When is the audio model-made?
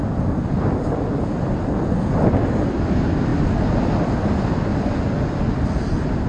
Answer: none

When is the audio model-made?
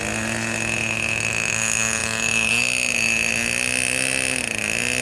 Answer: none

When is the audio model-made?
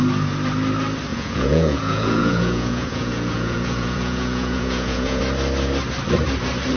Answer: 1.1-5.2 (vocoder, Vocos)